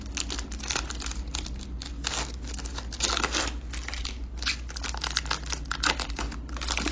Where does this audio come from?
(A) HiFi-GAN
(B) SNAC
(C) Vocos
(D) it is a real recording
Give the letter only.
D